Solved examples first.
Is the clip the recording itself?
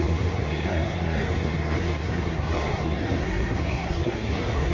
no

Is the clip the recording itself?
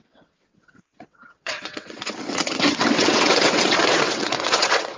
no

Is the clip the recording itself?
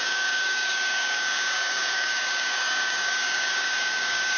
no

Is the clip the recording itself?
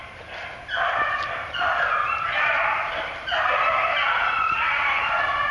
yes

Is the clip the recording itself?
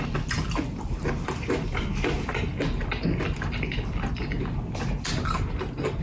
yes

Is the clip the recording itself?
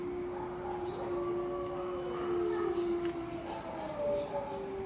yes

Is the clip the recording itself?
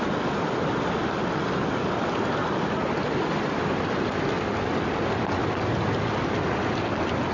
yes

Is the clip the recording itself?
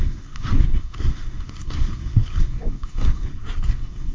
no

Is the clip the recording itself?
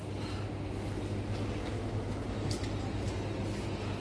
yes